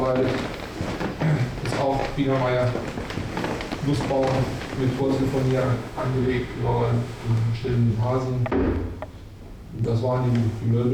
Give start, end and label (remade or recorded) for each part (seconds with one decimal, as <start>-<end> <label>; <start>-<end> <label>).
0.0-5.6 recorded; 5.6-7.9 remade; 7.9-10.9 recorded

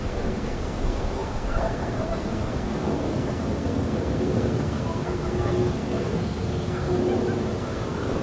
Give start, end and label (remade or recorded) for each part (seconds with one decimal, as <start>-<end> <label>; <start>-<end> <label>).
0.0-7.0 remade; 7.0-7.6 recorded; 7.6-8.2 remade